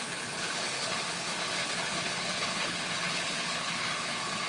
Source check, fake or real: fake